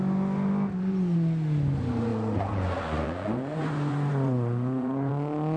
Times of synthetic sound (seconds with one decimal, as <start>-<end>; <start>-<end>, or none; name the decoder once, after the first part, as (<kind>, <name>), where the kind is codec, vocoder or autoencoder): 2.1-5.1 (vocoder, Vocos)